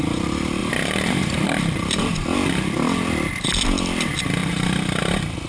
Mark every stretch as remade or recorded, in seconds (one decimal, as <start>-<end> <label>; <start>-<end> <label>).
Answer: 0.0-0.6 recorded; 0.6-2.0 remade; 2.0-4.4 recorded; 4.4-5.0 remade; 5.0-5.5 recorded

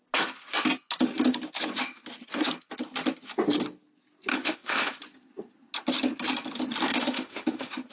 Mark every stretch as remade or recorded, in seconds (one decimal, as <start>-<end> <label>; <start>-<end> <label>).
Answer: 0.0-4.3 recorded; 4.3-4.9 remade; 4.9-6.9 recorded; 6.9-7.9 remade

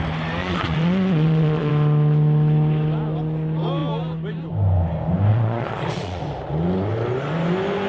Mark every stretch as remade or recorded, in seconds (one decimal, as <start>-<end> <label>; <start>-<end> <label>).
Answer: 0.0-0.4 recorded; 0.4-1.7 remade; 1.7-5.3 recorded; 5.3-6.2 remade; 6.2-7.9 recorded

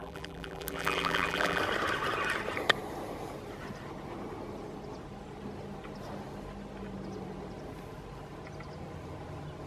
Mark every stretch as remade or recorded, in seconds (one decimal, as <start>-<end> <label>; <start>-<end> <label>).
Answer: 0.0-1.6 remade; 1.6-9.7 recorded

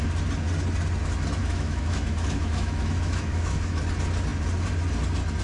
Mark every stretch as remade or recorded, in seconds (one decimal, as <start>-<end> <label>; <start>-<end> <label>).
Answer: 0.0-1.4 recorded; 1.4-3.8 remade; 3.8-5.4 recorded

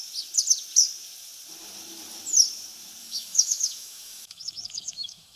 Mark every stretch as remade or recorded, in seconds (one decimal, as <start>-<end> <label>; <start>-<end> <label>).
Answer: 0.0-3.0 recorded; 3.0-5.4 remade

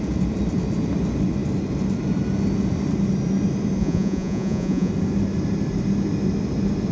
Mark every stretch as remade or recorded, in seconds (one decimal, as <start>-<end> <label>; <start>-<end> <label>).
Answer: 0.0-3.8 recorded; 3.8-4.9 remade; 4.9-6.9 recorded

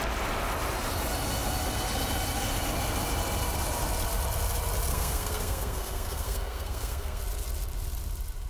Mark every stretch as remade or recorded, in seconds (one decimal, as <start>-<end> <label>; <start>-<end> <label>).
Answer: 0.0-4.9 recorded; 4.9-7.2 remade; 7.2-8.5 recorded